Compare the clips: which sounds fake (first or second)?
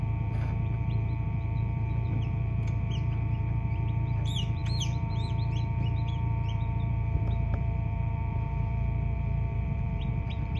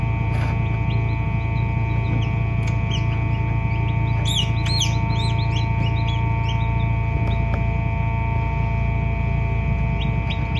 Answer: first